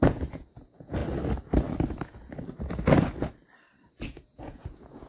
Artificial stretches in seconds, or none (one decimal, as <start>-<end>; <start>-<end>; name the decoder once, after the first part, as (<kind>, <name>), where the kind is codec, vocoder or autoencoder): 0.0-1.0 (vocoder, Vocos); 3.9-5.1